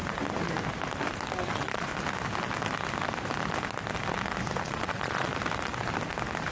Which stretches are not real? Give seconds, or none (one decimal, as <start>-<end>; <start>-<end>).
1.5-1.9; 4.6-5.3